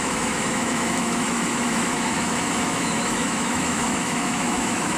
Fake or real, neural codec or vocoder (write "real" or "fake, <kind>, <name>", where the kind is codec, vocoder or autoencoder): fake, autoencoder, DAC-VAE